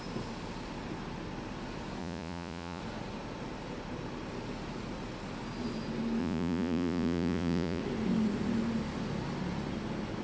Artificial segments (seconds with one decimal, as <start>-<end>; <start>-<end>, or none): 2.0-2.8; 6.2-7.8